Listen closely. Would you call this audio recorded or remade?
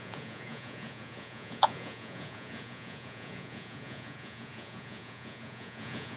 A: remade